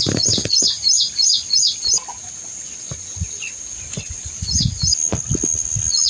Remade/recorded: recorded